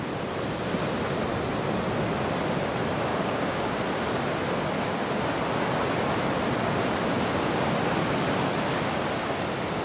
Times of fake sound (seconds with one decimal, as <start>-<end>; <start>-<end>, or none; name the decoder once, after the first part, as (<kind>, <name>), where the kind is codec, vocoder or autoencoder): 3.1-3.8 (codec, DAC)